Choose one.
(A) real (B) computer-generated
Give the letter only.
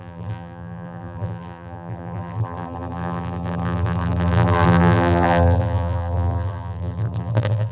B